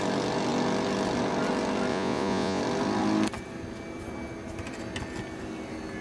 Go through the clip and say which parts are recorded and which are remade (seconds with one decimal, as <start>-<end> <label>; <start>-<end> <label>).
0.0-1.9 recorded; 1.9-2.6 remade; 2.6-6.0 recorded